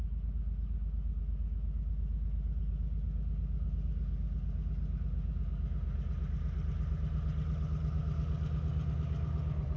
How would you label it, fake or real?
real